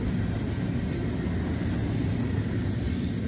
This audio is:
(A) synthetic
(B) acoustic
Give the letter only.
A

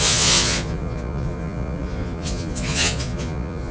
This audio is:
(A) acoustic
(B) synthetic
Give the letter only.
B